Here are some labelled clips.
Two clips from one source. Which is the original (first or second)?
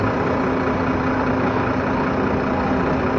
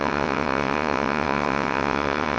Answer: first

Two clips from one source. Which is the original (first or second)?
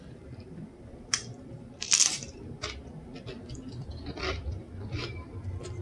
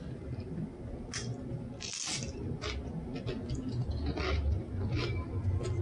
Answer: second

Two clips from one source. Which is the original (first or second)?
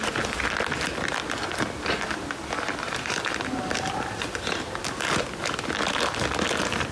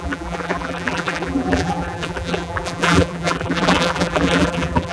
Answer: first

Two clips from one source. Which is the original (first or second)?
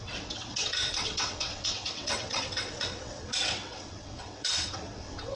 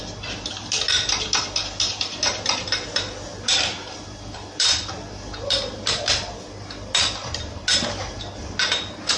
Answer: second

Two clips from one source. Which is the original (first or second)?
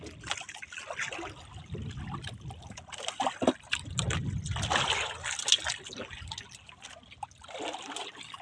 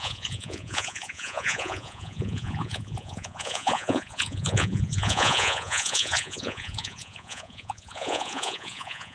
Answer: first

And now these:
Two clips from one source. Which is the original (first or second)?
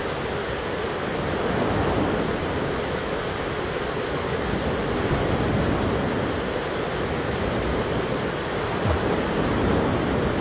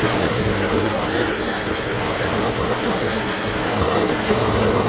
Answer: first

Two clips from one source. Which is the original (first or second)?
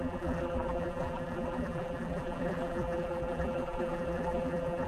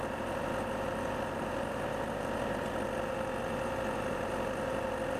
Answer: second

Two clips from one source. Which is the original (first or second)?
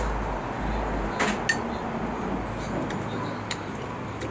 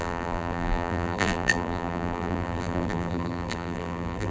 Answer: first